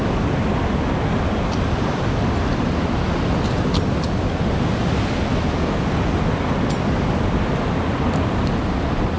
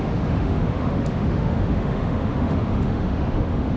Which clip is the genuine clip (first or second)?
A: first